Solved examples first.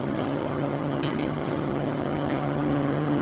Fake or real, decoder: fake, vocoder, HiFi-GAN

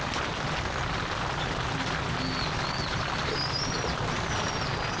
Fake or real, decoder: real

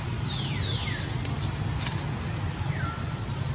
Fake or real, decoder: real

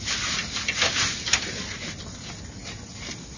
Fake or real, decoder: real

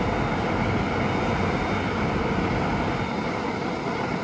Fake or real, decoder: real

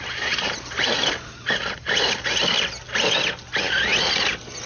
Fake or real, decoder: real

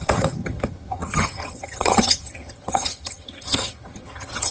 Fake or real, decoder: fake, vocoder, HiFi-GAN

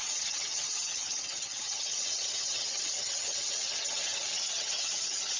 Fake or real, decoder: fake, vocoder, HiFi-GAN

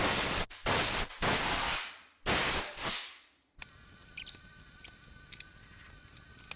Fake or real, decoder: real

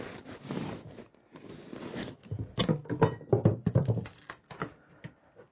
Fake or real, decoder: real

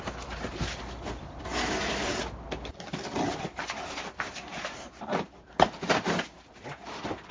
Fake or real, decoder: real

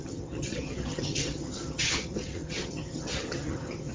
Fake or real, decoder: fake, vocoder, HiFi-GAN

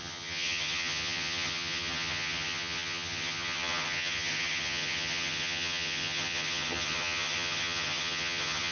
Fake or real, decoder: fake, vocoder, HiFi-GAN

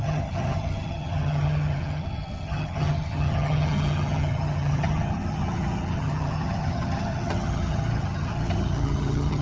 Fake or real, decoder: fake, vocoder, HiFi-GAN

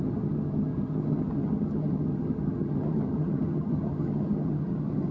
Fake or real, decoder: fake, vocoder, HiFi-GAN